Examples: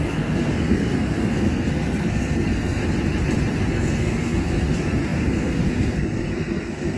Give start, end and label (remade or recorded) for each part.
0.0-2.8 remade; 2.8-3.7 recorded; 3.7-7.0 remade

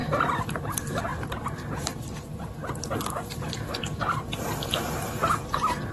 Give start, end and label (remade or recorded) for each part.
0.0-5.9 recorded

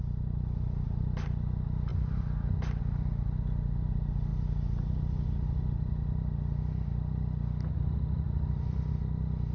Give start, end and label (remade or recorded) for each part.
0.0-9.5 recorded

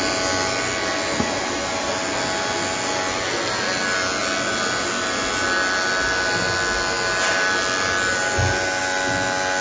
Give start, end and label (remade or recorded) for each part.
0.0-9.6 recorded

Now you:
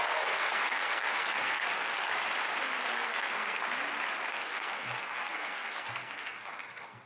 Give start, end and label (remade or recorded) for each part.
0.0-2.1 remade; 2.1-2.9 recorded; 2.9-3.6 remade; 3.6-4.3 recorded; 4.3-7.1 remade

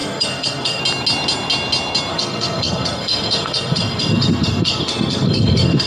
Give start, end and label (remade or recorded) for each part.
0.0-0.8 remade; 0.8-2.1 recorded; 2.1-5.9 remade